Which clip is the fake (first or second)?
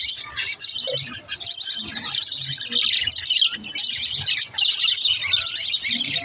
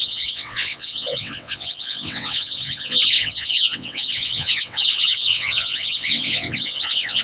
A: second